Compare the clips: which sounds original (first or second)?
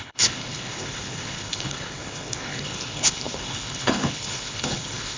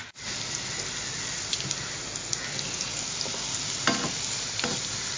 second